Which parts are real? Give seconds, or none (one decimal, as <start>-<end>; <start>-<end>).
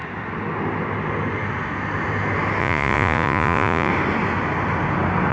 0.0-2.6; 3.9-5.3